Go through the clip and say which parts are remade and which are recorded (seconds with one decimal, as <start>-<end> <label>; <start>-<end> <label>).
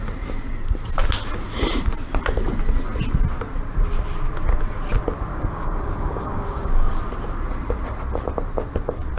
0.0-5.3 recorded; 5.3-6.9 remade; 6.9-9.2 recorded